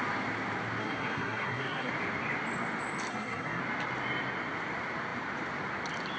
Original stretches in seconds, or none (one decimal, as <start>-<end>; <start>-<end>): 0.0-0.8; 1.9-3.1; 3.6-6.2